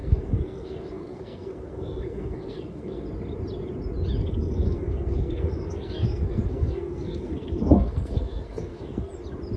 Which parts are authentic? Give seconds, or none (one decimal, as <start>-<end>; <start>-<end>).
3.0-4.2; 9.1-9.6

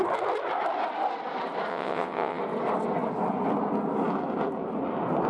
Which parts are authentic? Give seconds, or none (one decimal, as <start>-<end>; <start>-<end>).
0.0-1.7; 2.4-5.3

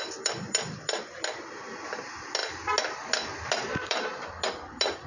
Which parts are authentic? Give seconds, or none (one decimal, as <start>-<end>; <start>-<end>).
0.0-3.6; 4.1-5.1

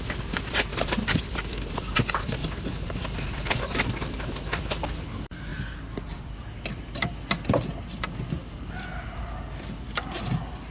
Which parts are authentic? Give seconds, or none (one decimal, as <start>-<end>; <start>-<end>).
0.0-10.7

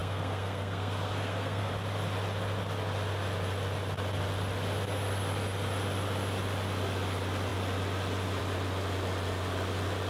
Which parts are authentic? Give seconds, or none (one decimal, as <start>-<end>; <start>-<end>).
1.7-10.1

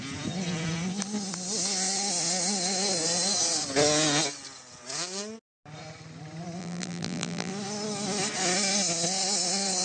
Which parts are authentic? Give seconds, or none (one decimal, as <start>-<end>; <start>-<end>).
0.0-6.6; 7.5-9.8

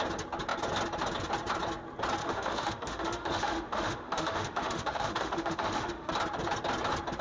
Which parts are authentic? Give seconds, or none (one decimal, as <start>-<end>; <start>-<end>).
0.0-2.2; 6.1-7.2